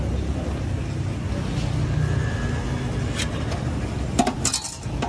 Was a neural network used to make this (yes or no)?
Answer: no